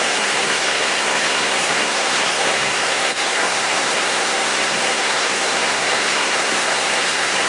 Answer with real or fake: fake